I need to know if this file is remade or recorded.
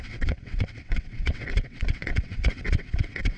remade